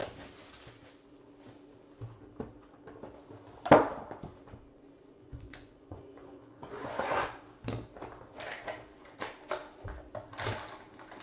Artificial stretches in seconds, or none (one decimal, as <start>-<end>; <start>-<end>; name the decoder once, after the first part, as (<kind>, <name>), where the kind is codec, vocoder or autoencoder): 5.1-7.4 (vocoder, Vocos)